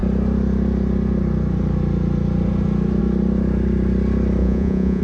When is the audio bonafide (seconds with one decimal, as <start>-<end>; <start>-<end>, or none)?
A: 0.0-4.4